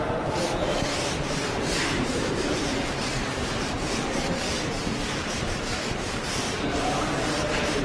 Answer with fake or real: fake